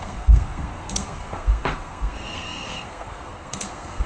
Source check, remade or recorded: remade